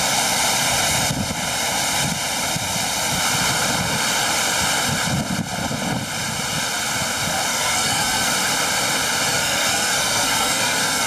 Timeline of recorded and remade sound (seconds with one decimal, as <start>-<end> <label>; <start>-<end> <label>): 0.0-7.5 recorded; 7.5-8.3 remade; 8.3-9.3 recorded; 9.3-11.1 remade